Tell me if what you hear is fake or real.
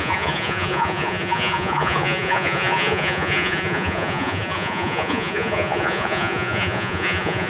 fake